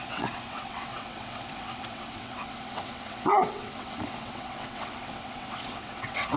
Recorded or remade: remade